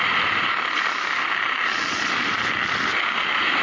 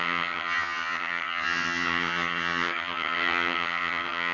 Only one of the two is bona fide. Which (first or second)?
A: first